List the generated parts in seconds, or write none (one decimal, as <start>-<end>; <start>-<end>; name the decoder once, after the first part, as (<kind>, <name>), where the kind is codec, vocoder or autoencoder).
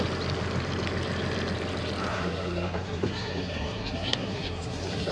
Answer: 2.1-5.1 (codec, SNAC)